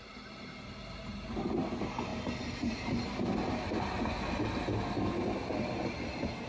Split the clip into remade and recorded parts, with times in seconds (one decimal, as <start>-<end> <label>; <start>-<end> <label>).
0.0-6.5 recorded